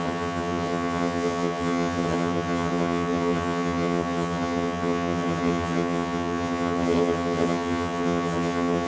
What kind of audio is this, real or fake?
fake